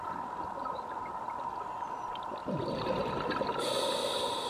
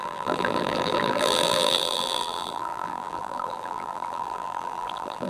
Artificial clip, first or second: second